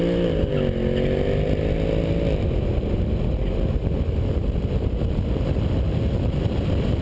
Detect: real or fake real